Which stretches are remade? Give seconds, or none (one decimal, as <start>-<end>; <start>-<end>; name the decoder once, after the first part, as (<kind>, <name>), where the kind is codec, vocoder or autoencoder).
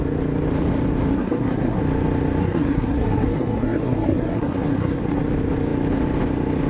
1.1-1.8 (codec, SNAC); 2.4-5.2